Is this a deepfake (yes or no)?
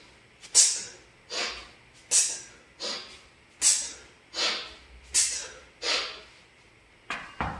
no